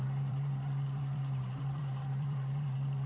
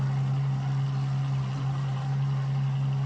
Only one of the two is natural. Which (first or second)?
second